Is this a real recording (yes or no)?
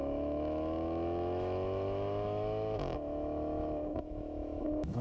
no